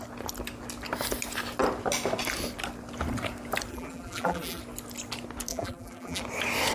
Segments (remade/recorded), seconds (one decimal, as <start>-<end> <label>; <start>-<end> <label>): 0.0-3.7 recorded; 3.7-4.6 remade; 4.6-5.5 recorded; 5.5-6.2 remade; 6.2-6.7 recorded